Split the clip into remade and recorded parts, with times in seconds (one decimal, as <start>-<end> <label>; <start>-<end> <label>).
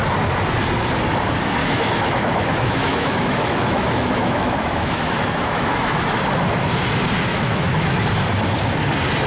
0.0-1.6 recorded; 1.6-6.2 remade; 6.2-7.3 recorded; 7.3-8.0 remade; 8.0-9.3 recorded